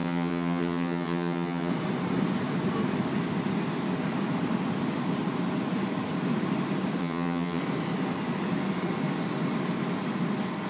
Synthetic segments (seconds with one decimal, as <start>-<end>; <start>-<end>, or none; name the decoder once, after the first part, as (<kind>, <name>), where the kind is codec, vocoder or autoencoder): 0.0-1.7 (vocoder, HiFi-GAN); 7.0-7.6